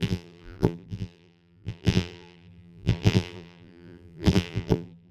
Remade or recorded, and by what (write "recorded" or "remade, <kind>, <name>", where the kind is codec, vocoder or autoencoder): remade, vocoder, BigVGAN v2